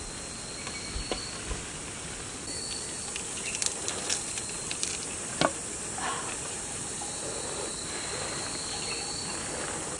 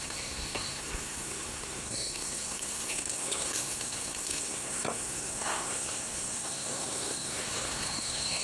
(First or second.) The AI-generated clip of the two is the second